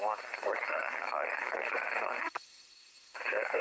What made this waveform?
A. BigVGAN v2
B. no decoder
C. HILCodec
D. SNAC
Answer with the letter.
D